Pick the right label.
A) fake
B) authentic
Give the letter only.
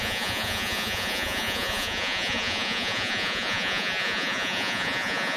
A